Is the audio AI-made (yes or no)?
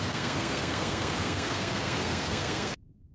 yes